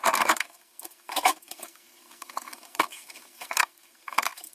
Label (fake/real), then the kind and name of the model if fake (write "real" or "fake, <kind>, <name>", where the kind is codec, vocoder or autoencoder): fake, codec, SNAC